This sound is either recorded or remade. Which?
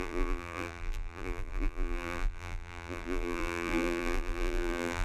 remade